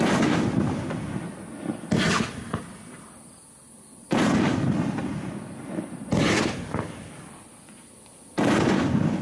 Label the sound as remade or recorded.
recorded